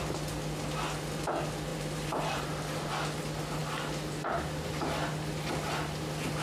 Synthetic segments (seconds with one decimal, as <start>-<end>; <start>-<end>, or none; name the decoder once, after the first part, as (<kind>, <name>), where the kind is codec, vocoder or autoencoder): 1.7-2.9 (vocoder, BigVGAN v2)